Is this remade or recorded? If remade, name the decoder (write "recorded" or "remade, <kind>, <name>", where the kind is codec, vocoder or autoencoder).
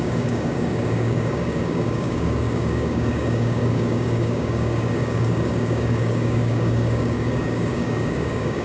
remade, codec, DAC